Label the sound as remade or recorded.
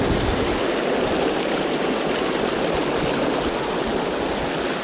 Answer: recorded